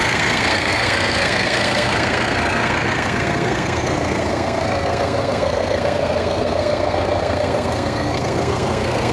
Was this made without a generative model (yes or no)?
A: no